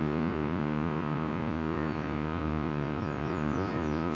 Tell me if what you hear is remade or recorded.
remade